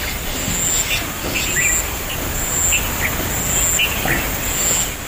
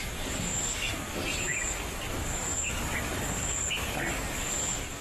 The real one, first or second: first